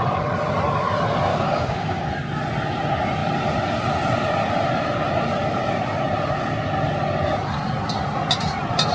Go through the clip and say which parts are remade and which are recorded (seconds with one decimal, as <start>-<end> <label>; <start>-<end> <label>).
0.0-1.3 recorded; 1.3-2.1 remade; 2.1-8.9 recorded